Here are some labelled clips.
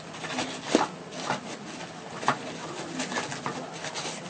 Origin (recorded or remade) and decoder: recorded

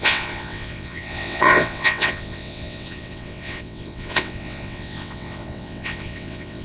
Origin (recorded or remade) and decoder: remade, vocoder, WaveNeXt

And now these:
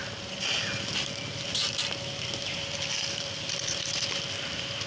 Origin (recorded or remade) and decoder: recorded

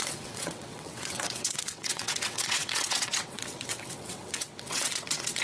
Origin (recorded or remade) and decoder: remade, vocoder, WaveNeXt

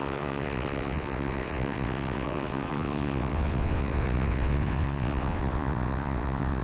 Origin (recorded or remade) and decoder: remade, vocoder, WaveNeXt